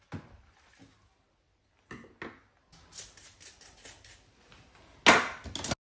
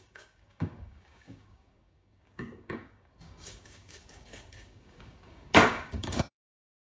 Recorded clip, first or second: first